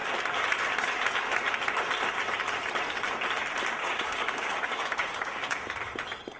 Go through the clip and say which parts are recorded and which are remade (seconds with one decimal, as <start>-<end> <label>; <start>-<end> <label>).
0.0-3.8 recorded; 3.8-5.7 remade; 5.7-6.4 recorded